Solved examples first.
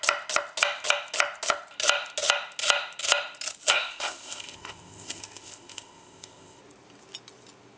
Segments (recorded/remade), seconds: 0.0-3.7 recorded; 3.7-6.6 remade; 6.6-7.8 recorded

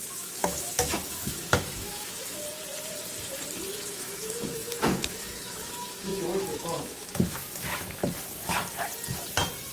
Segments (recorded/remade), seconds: 0.0-2.4 remade; 2.4-3.7 recorded; 3.7-8.0 remade; 8.0-9.7 recorded

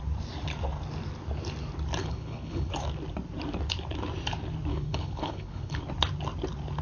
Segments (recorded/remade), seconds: 0.0-2.0 recorded; 2.0-2.7 remade; 2.7-4.7 recorded; 4.7-5.8 remade; 5.8-6.8 recorded

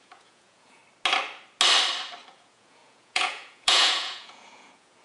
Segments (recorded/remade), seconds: 0.0-0.8 remade; 0.8-2.3 recorded; 2.3-5.0 remade

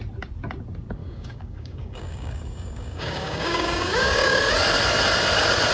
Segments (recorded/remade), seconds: 0.0-1.0 recorded; 1.0-4.4 remade; 4.4-5.7 recorded